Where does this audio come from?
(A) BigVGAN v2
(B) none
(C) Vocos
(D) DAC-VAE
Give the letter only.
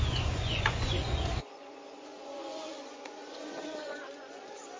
C